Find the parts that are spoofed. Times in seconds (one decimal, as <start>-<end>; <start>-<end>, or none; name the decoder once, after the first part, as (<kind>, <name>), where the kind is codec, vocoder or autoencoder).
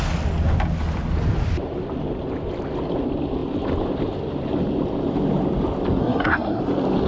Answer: 6.0-6.6 (codec, SNAC)